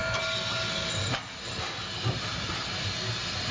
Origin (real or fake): real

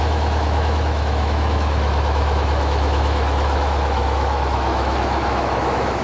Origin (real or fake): fake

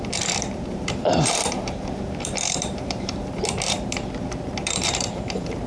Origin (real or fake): fake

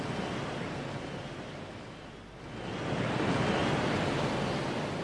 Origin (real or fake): real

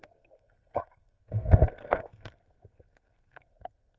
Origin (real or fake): fake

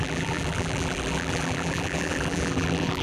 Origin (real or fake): fake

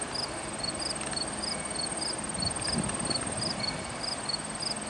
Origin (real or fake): real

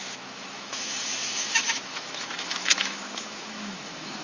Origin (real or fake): fake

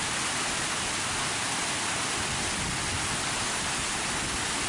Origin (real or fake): real